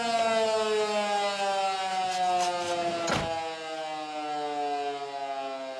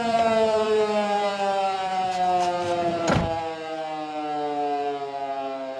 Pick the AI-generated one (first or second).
second